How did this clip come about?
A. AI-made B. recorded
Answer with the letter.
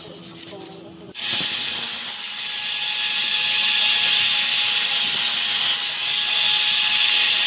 B